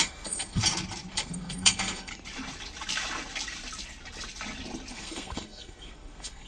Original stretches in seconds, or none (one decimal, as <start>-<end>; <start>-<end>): 0.6-1.1; 2.1-4.9